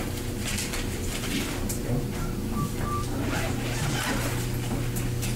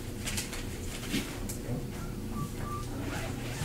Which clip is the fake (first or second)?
second